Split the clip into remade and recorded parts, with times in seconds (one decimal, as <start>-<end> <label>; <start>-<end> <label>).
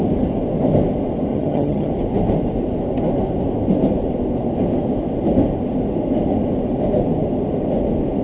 0.0-1.3 recorded; 1.3-1.9 remade; 1.9-8.2 recorded